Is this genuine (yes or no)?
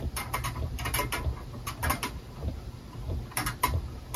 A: yes